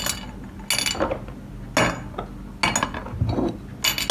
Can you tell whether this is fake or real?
real